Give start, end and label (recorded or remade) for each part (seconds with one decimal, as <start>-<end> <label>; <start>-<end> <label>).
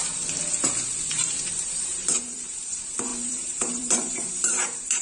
0.0-1.1 recorded; 1.1-5.0 remade